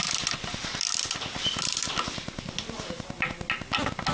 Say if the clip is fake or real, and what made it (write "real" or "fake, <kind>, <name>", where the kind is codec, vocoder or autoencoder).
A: real